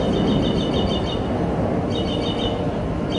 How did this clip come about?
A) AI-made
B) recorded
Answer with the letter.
B